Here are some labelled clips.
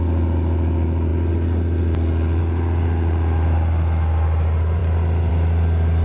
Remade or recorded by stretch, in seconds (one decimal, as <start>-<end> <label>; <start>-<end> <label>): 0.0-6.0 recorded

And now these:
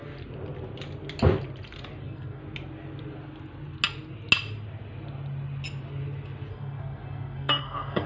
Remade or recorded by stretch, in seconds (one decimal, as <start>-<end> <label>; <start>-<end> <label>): 0.0-2.0 recorded; 2.0-2.4 remade; 2.4-6.5 recorded; 6.5-8.1 remade

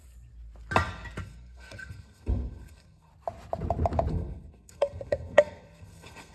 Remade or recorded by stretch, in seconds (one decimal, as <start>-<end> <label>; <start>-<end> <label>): 0.0-1.2 recorded; 1.2-3.1 remade; 3.1-4.1 recorded; 4.1-6.3 remade